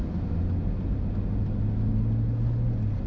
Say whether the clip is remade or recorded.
recorded